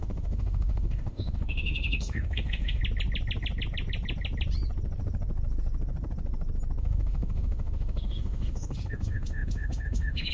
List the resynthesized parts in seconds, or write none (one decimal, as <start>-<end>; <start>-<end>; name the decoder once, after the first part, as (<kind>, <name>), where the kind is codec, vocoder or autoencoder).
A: 0.0-2.8 (autoencoder, DAC-VAE); 6.8-10.3